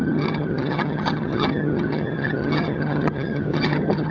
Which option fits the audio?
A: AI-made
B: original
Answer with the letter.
A